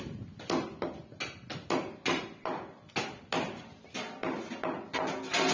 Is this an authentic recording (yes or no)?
yes